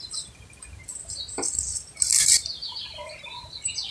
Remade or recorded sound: recorded